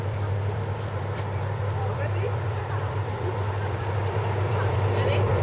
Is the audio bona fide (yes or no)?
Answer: no